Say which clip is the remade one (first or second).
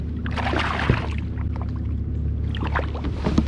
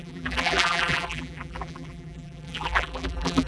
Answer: second